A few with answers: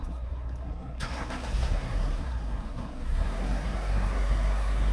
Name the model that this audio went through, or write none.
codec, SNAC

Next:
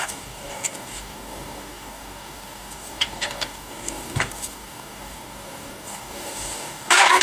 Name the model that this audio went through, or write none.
codec, DAC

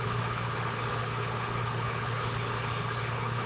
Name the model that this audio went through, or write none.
codec, HILCodec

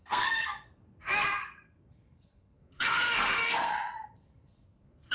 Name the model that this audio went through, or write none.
codec, SNAC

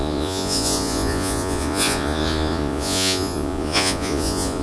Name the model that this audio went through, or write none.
vocoder, Vocos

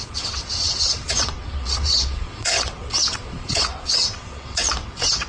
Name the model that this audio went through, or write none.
vocoder, WaveNeXt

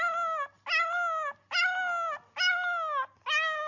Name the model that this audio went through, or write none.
none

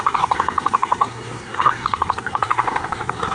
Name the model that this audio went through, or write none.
codec, SNAC